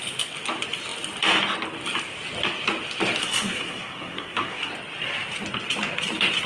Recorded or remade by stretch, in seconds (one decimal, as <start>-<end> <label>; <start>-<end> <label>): 0.0-3.2 recorded; 3.2-4.7 remade; 4.7-6.5 recorded